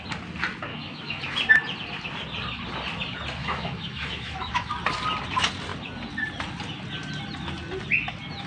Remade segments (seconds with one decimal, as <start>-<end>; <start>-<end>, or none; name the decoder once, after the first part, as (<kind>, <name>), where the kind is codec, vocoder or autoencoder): 0.7-1.2 (autoencoder, DAC-VAE); 3.4-4.7